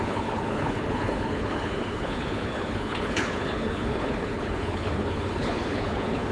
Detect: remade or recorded remade